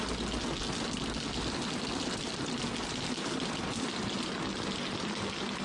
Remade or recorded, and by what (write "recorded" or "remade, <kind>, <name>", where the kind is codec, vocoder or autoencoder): recorded